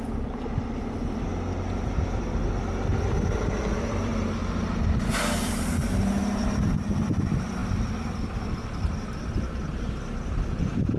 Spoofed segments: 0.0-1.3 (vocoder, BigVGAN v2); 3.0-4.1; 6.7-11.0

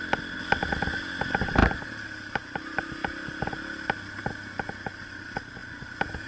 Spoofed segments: none

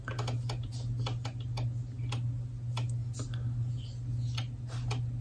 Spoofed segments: none

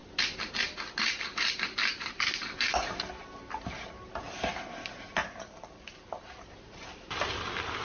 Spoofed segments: 5.2-6.5 (vocoder, BigVGAN v2)

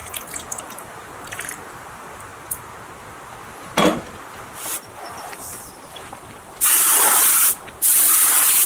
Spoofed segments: 0.6-2.3 (vocoder, BigVGAN v2); 4.9-8.7

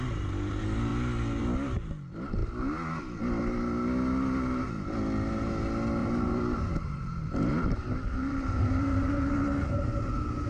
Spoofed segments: 6.0-9.3 (vocoder, BigVGAN v2)

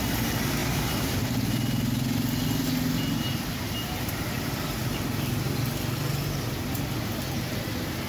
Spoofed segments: 0.6-1.2 (vocoder, BigVGAN v2)